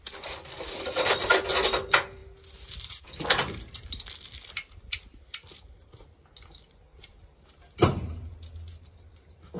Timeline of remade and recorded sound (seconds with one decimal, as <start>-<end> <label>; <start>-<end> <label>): 0.0-9.6 recorded